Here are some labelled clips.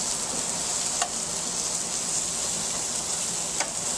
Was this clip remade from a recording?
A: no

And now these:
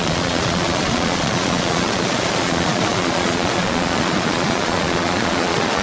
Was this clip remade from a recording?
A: yes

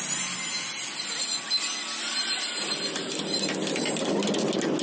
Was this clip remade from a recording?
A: no